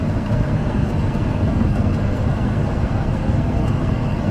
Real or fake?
fake